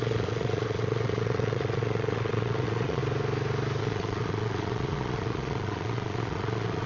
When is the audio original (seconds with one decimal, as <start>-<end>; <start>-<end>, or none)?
3.0-3.8

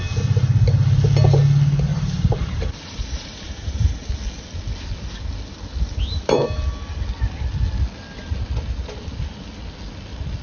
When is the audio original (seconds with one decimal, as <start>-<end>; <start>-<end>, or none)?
0.0-1.9; 4.1-10.4

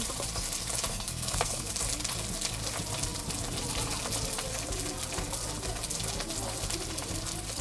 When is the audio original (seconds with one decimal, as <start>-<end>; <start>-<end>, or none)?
0.0-0.9; 1.7-7.6

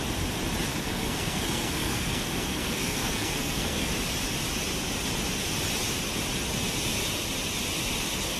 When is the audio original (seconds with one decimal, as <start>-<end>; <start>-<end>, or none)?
0.0-0.7; 3.9-8.4